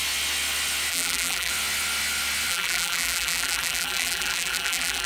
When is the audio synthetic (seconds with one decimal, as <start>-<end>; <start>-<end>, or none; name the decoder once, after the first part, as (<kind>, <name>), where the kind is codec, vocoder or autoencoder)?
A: 0.9-1.5 (vocoder, BigVGAN v2); 2.5-5.1